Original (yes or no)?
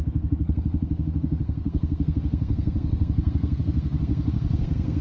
no